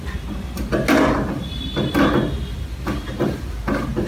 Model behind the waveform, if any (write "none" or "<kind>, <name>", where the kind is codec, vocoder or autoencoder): none